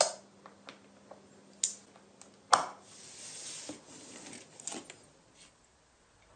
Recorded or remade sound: recorded